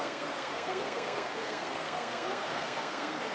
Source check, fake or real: fake